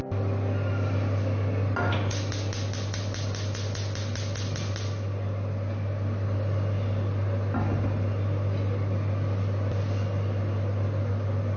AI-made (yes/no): no